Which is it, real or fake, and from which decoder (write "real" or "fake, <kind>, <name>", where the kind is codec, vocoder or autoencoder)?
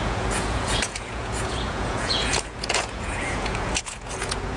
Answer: fake, vocoder, Vocos